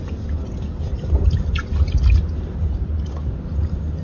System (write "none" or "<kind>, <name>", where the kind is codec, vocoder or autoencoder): none